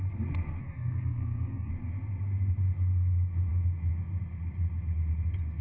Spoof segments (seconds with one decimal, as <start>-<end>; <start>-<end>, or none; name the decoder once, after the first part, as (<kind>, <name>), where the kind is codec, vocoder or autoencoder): 0.6-1.7 (codec, SNAC)